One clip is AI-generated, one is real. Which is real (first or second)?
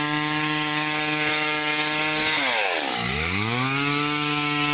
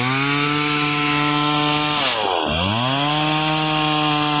second